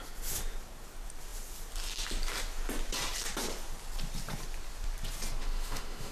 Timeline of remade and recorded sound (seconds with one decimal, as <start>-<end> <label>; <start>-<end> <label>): 0.0-5.4 recorded; 5.4-6.1 remade